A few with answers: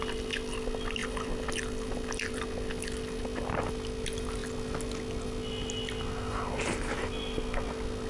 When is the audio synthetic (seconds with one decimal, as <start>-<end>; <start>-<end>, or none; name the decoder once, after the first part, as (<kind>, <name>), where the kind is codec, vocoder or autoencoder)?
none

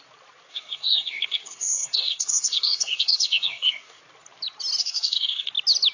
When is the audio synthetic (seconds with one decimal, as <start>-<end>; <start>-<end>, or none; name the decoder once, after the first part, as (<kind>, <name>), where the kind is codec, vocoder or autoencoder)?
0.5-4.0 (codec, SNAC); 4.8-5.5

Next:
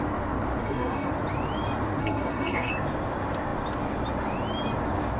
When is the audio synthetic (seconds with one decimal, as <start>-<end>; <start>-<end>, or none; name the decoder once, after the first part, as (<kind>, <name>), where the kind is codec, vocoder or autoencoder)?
0.6-1.1 (codec, SNAC); 2.0-2.7

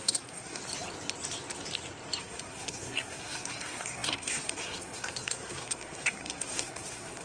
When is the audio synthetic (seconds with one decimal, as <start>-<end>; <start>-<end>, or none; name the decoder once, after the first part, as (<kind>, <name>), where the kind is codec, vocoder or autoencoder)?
0.0-0.6 (codec, SNAC); 2.2-7.2

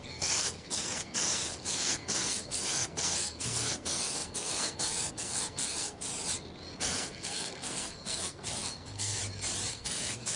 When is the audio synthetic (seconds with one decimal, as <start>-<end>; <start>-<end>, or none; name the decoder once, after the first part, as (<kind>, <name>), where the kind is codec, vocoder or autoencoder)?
0.0-6.1 (codec, SNAC); 6.8-9.2; 9.7-10.4

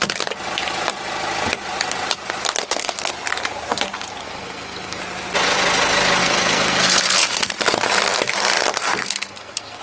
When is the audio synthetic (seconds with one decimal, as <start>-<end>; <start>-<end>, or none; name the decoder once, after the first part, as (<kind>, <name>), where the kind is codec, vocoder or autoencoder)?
2.6-3.1 (codec, SNAC); 4.2-5.0; 6.2-7.5; 8.7-9.8